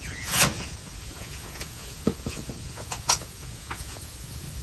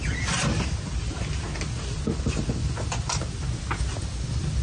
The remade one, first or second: first